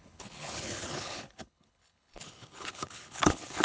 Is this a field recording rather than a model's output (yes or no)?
no